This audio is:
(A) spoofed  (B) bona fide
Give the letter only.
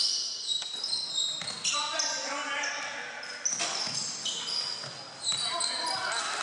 B